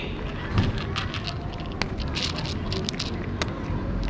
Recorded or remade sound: recorded